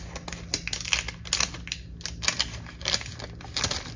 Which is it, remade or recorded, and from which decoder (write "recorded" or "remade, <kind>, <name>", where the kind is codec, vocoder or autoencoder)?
recorded